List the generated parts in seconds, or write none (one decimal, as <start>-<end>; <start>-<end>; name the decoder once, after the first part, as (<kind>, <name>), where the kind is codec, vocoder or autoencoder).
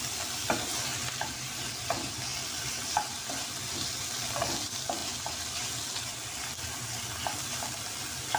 none